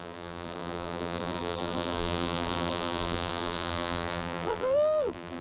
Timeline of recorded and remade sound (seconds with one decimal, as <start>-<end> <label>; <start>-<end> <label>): 0.0-5.4 remade